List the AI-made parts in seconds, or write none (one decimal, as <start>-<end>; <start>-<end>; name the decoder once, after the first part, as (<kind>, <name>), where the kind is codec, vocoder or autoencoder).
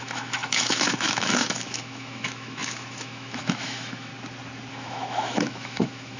0.0-4.1 (autoencoder, DAC-VAE); 4.7-6.2